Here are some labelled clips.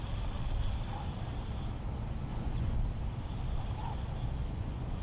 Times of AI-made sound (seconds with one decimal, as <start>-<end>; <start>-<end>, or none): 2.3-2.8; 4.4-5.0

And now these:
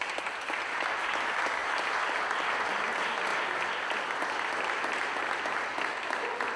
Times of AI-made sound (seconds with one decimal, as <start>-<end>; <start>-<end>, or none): none

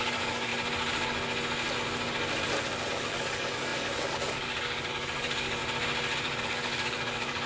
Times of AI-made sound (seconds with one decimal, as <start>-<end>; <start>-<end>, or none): 0.0-0.5; 2.9-5.6; 6.4-7.5

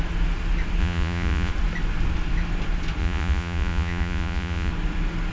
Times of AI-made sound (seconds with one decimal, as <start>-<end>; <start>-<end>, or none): 0.8-1.5; 3.0-4.7

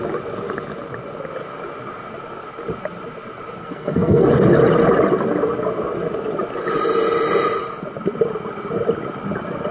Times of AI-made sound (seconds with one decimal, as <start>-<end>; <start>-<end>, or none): 3.6-4.3

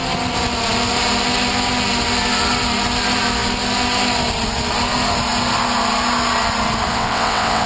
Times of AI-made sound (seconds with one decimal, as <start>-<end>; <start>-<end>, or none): 6.9-7.7